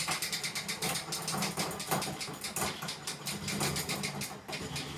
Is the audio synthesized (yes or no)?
no